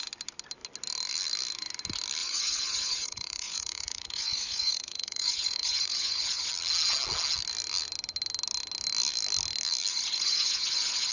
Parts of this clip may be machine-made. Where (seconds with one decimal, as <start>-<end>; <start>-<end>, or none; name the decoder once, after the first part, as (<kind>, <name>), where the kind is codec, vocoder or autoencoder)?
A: 2.2-6.5 (vocoder, Vocos); 9.9-11.1